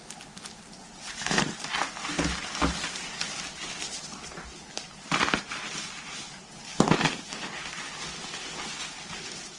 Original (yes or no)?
yes